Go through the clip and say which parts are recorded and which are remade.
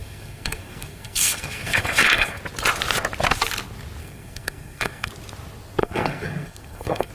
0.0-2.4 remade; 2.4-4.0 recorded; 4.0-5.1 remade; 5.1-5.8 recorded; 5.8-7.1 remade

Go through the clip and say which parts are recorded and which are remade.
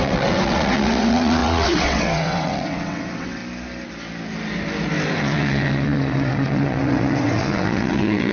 0.0-3.4 remade; 3.4-5.2 recorded; 5.2-8.3 remade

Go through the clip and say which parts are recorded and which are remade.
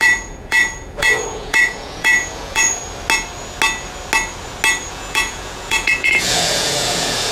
0.0-2.8 remade; 2.8-4.9 recorded; 4.9-7.3 remade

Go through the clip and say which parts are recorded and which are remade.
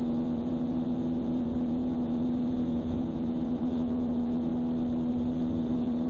0.0-4.5 remade; 4.5-5.1 recorded; 5.1-6.1 remade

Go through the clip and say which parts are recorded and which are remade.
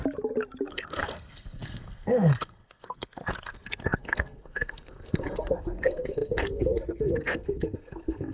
0.0-0.7 recorded; 0.7-8.3 remade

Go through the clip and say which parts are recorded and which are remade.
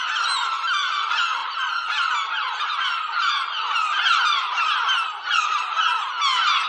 0.0-1.4 recorded; 1.4-5.4 remade; 5.4-6.7 recorded